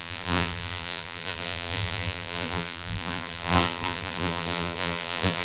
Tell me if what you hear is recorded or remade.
remade